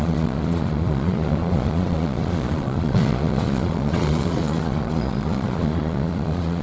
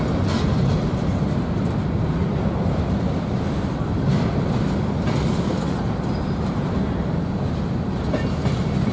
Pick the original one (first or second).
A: second